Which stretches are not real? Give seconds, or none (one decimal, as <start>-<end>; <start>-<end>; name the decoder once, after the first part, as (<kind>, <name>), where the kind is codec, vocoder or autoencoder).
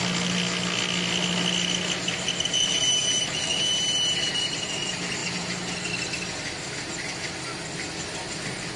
none